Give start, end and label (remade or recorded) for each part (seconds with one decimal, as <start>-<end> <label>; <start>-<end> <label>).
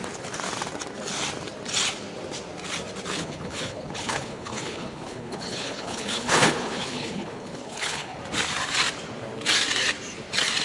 0.0-3.1 recorded; 3.1-8.2 remade; 8.2-10.6 recorded